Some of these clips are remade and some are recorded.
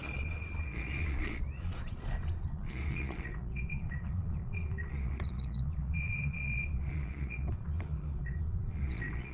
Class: remade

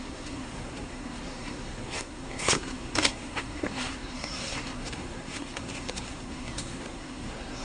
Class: remade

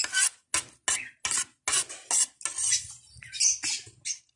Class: recorded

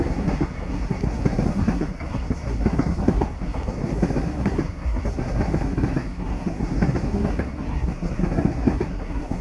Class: remade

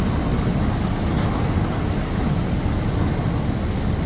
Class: recorded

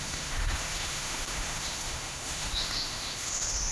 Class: remade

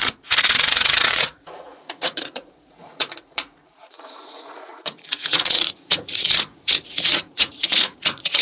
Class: remade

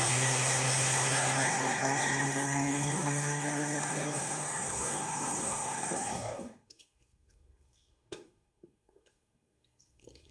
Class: remade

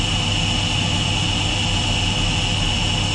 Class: recorded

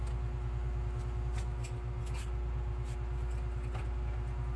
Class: recorded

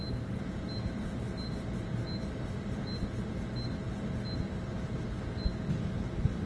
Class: recorded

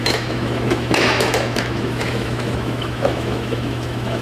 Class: remade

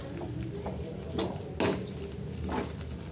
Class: recorded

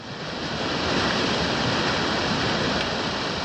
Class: recorded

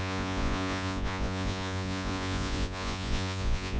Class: remade